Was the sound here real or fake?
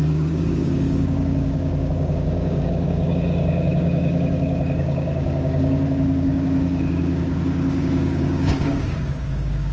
fake